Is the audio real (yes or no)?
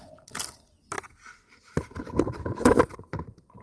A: yes